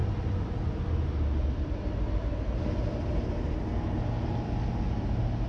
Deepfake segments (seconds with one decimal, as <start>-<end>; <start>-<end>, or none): none